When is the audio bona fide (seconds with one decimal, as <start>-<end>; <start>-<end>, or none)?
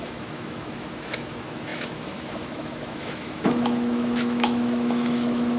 none